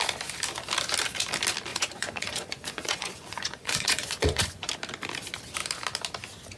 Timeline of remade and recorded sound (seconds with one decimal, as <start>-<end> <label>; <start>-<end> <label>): 0.0-1.7 recorded; 1.7-4.7 remade; 4.7-6.6 recorded